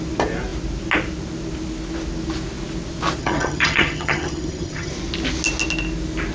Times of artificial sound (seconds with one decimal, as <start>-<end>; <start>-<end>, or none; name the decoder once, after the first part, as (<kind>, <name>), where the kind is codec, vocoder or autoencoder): 3.2-4.9 (vocoder, HiFi-GAN)